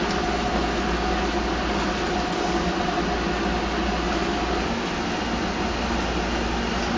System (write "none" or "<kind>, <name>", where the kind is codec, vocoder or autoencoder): none